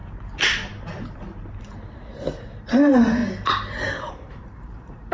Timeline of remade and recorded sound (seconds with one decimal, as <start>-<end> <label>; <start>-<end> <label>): 0.0-1.5 recorded; 1.5-3.2 remade; 3.2-4.1 recorded; 4.1-5.1 remade